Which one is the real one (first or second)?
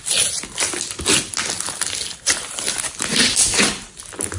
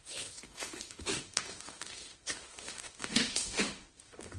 first